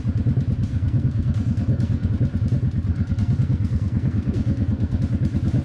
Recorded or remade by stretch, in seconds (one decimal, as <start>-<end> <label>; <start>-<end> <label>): 0.0-0.7 recorded; 0.7-2.1 remade; 2.1-2.9 recorded; 2.9-5.0 remade; 5.0-5.6 recorded